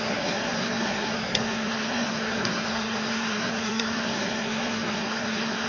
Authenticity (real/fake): fake